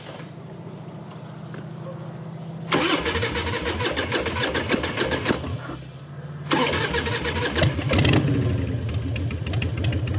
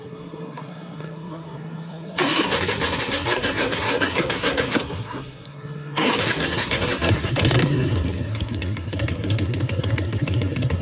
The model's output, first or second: second